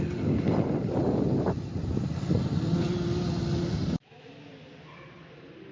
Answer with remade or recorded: recorded